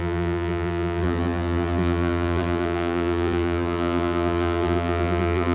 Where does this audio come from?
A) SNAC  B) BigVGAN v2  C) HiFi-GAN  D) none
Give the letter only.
B